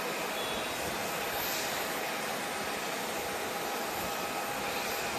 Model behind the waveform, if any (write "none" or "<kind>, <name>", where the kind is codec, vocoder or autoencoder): none